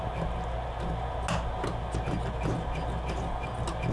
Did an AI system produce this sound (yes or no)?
no